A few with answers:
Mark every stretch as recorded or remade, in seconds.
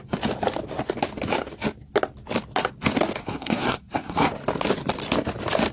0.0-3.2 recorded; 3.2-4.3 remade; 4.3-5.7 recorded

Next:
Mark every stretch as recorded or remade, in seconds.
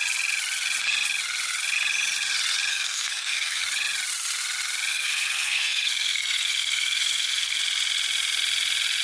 0.0-2.7 recorded; 2.7-3.6 remade; 3.6-4.9 recorded; 4.9-7.6 remade; 7.6-9.0 recorded